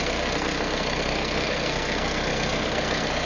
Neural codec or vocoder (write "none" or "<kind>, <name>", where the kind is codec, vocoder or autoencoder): codec, SNAC